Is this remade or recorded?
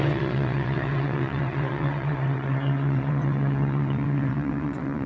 remade